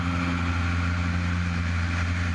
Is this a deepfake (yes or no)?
no